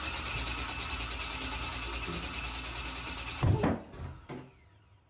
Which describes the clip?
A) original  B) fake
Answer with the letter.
A